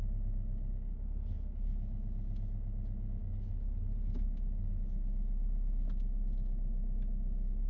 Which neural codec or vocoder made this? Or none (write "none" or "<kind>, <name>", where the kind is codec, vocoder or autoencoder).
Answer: none